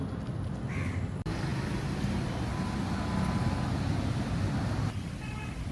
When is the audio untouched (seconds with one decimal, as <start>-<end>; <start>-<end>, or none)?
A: 0.0-5.7